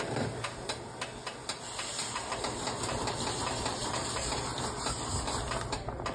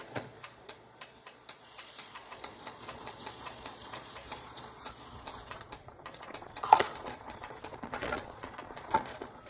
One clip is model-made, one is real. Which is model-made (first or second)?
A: second